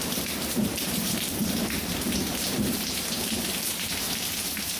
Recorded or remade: remade